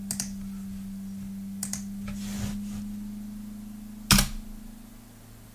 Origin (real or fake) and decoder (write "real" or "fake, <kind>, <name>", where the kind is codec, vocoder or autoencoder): real